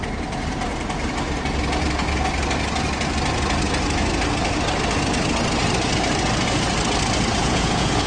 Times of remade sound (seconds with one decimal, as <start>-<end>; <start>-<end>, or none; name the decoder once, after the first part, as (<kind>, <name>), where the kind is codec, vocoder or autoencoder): 7.4-8.1 (vocoder, Vocos)